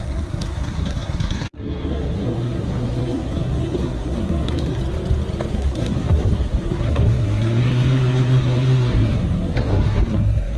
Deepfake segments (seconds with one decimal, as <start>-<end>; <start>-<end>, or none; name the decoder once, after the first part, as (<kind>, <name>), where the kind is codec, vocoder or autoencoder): 0.0-4.8 (codec, SNAC); 5.5-10.6